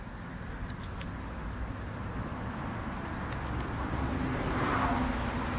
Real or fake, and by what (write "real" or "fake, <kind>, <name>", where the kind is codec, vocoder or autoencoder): real